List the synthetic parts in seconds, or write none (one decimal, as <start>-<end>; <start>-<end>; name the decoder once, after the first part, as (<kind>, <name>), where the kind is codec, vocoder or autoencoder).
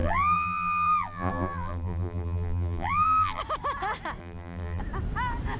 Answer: 0.0-3.4 (vocoder, BigVGAN v2); 4.2-4.8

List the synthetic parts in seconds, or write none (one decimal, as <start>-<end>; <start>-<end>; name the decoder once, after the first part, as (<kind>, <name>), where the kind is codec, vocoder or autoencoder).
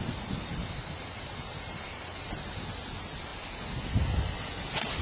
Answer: 0.5-2.3 (vocoder, BigVGAN v2)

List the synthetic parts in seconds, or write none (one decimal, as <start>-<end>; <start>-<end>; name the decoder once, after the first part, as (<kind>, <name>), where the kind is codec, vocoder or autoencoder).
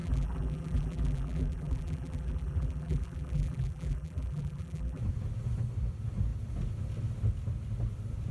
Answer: 0.0-5.0 (vocoder, BigVGAN v2)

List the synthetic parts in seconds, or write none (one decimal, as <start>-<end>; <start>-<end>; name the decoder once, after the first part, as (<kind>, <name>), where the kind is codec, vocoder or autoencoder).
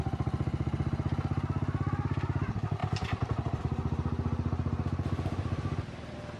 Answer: none